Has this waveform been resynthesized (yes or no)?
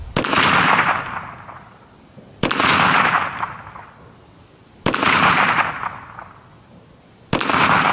no